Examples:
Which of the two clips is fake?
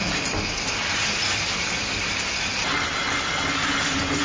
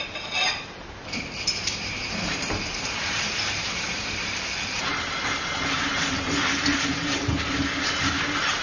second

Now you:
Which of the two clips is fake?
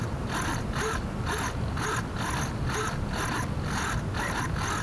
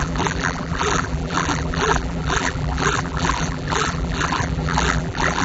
second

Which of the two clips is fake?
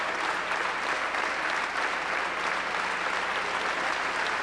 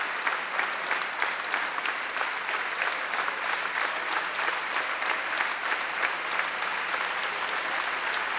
second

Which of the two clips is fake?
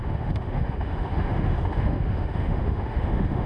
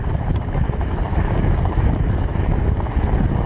first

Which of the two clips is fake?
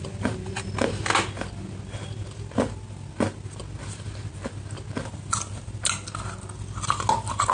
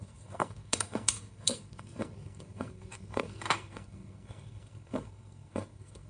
second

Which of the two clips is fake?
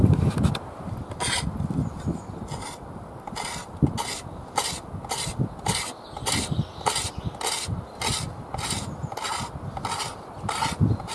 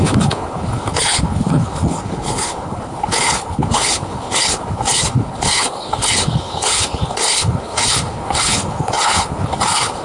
second